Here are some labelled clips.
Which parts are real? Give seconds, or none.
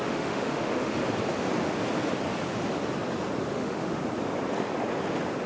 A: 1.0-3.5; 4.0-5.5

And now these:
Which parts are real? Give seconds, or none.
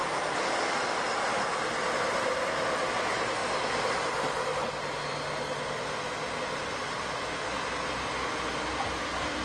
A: 0.0-9.4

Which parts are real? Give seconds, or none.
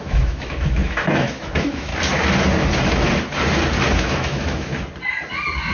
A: 1.9-4.0; 4.7-5.7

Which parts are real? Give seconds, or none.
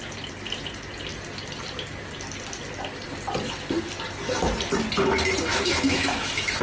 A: 0.0-5.5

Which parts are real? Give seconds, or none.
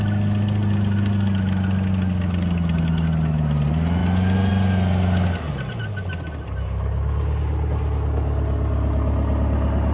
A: 0.0-9.9